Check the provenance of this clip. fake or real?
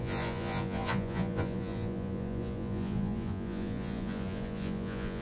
fake